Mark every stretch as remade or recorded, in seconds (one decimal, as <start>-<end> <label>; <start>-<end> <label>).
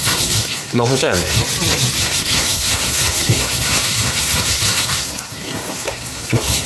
0.0-1.4 remade; 1.4-2.0 recorded; 2.0-6.7 remade